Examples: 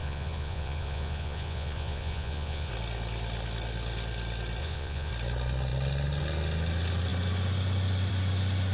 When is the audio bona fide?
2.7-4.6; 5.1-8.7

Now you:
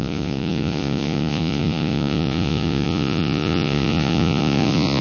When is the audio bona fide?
none

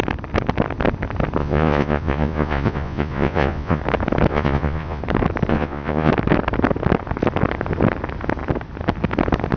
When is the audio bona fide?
0.0-1.4; 3.8-4.3; 5.0-5.5; 6.1-9.6

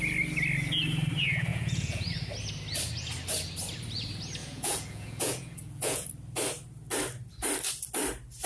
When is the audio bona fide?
0.0-1.5; 2.1-4.4; 6.1-8.5

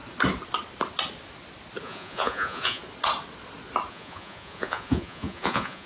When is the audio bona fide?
0.0-1.8; 2.8-3.9

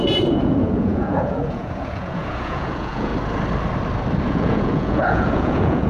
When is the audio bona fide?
3.1-4.3

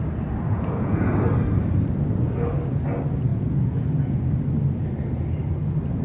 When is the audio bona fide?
0.0-0.5; 1.1-3.3; 4.3-6.0